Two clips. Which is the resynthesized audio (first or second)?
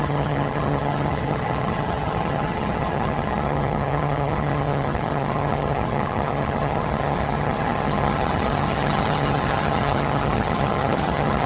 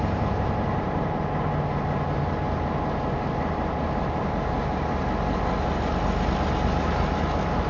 first